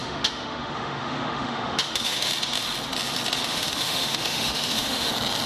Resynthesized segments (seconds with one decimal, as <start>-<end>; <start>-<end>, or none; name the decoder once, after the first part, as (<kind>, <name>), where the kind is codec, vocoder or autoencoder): 0.0-2.3 (autoencoder, DAC-VAE); 3.5-5.1